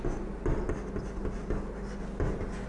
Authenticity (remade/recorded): recorded